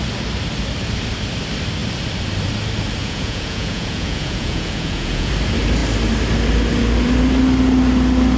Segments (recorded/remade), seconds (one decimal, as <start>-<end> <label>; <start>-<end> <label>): 0.0-3.0 recorded; 3.0-5.3 remade; 5.3-8.4 recorded